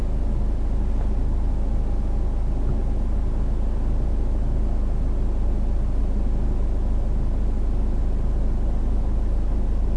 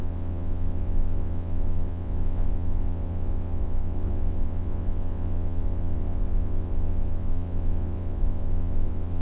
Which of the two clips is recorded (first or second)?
first